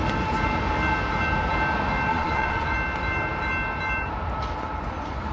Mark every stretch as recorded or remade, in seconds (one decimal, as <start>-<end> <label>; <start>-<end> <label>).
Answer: 0.0-2.1 recorded; 2.1-2.7 remade; 2.7-5.3 recorded